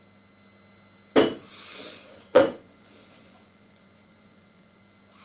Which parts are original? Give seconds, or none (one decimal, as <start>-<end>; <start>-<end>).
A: 0.0-1.7; 4.8-5.2